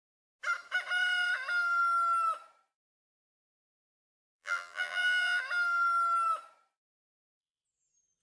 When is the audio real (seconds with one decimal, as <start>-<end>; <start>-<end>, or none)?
0.0-2.8; 5.4-8.2